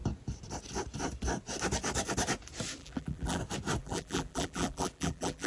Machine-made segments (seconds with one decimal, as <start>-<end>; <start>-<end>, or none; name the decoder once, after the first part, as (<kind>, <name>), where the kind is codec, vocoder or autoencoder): 2.8-3.4 (vocoder, BigVGAN v2); 3.8-5.5